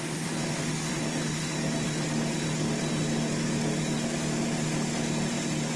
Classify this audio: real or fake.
real